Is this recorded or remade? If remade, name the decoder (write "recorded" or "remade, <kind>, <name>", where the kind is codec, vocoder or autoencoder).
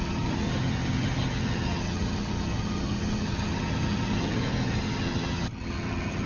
remade, vocoder, HiFi-GAN